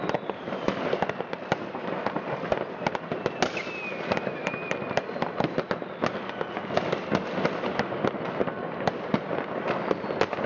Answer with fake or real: real